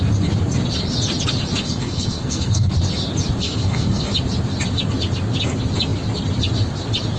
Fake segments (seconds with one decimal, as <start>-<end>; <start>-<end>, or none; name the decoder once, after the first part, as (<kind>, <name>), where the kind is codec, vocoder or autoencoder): 1.6-2.7 (codec, SNAC); 3.4-4.1